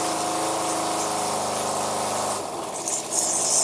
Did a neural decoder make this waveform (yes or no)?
no